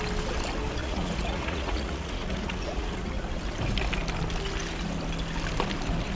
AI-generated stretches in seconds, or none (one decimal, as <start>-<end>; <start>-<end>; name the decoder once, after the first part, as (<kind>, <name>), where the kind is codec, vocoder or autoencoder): 0.8-3.1 (vocoder, Vocos)